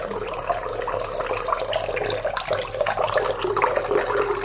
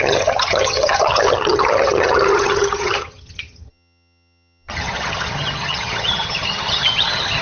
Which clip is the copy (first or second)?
second